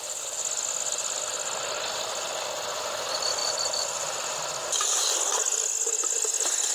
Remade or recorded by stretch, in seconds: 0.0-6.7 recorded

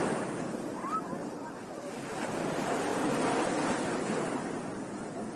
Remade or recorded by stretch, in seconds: 0.0-1.2 remade; 1.2-2.4 recorded; 2.4-2.9 remade; 2.9-5.4 recorded

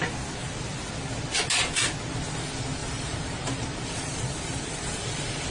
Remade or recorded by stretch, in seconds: 0.0-0.4 recorded; 0.4-0.9 remade; 0.9-2.8 recorded; 2.8-5.5 remade

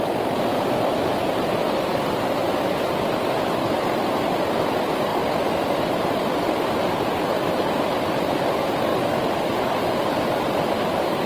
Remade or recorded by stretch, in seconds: 0.0-2.4 remade; 2.4-3.6 recorded; 3.6-8.9 remade; 8.9-9.6 recorded; 9.6-11.3 remade